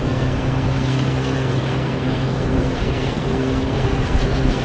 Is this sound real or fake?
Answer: fake